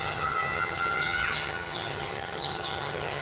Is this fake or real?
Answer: fake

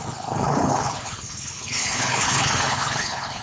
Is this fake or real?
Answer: fake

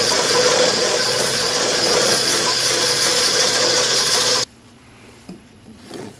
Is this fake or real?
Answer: fake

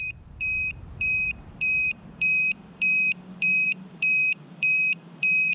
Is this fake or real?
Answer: fake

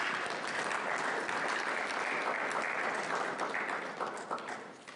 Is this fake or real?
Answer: real